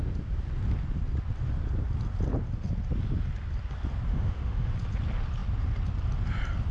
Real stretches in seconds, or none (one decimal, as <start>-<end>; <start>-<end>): 0.0-4.1; 4.7-6.7

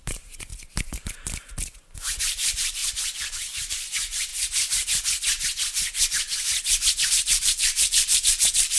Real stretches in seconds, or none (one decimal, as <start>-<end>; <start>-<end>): 0.5-2.2; 2.8-3.7; 4.3-7.1